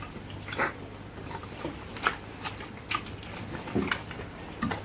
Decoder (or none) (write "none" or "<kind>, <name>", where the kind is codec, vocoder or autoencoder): none